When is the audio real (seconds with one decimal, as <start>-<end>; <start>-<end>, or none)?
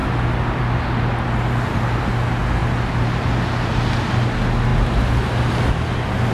0.0-6.3